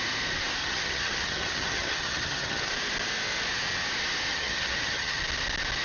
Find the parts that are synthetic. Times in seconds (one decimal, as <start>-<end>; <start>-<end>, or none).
0.6-2.7; 4.3-5.2